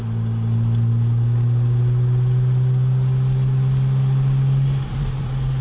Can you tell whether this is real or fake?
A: real